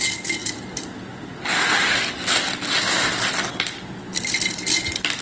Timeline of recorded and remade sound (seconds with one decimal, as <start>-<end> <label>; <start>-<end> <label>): 0.0-5.2 recorded